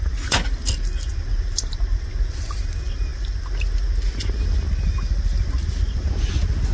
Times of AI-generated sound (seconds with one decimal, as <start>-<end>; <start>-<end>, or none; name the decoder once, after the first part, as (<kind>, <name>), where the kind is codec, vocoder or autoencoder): none